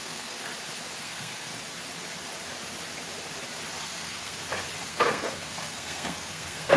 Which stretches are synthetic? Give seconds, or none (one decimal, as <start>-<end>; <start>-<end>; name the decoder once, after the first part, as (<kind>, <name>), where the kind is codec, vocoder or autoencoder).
0.0-0.5 (codec, SNAC); 1.0-1.5; 3.8-4.4; 4.9-6.8